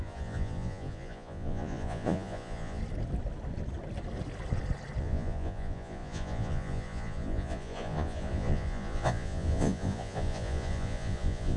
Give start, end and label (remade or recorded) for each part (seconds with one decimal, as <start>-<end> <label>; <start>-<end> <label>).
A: 0.0-2.8 remade; 2.8-5.0 recorded; 5.0-11.6 remade